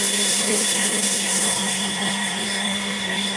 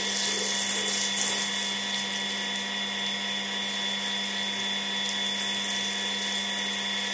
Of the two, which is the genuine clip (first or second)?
second